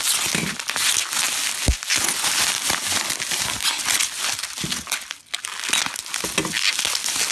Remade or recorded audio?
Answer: recorded